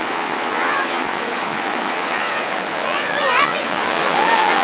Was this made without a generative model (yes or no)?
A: no